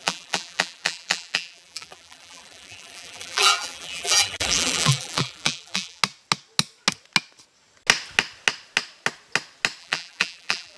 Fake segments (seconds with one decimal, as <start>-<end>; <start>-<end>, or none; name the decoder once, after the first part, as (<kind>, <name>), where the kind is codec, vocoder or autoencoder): 0.0-6.0 (vocoder, BigVGAN v2); 9.8-10.8